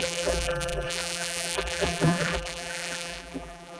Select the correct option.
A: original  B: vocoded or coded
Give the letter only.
B